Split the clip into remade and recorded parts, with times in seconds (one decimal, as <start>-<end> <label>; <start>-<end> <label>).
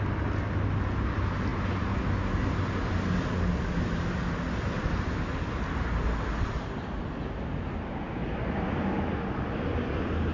0.0-8.2 recorded; 8.2-8.8 remade; 8.8-10.3 recorded